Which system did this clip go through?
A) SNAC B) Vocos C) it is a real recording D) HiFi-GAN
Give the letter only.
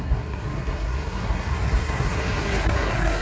A